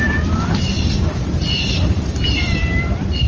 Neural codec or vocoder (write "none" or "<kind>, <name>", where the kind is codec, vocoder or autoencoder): vocoder, BigVGAN v2